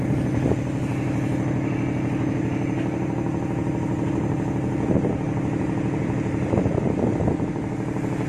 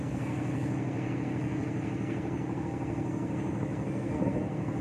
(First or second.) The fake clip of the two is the second